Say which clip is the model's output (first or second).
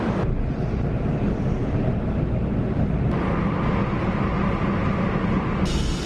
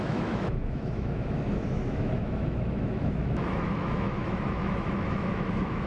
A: second